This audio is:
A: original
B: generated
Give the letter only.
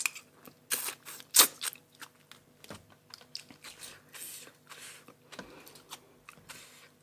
A